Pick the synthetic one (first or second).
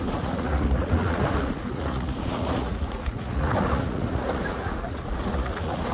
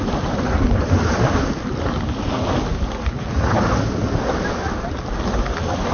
first